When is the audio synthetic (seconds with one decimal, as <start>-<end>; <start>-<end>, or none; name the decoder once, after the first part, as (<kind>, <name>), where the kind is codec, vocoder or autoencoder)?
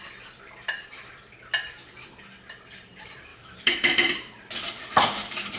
3.3-4.1 (autoencoder, DAC-VAE)